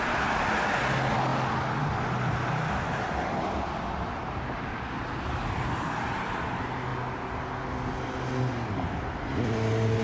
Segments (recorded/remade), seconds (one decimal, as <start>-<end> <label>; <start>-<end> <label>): 0.0-10.0 recorded